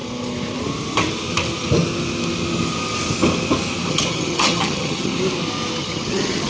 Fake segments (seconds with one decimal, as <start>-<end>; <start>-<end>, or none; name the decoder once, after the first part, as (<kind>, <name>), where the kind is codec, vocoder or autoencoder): 3.9-5.1 (vocoder, HiFi-GAN); 5.8-6.5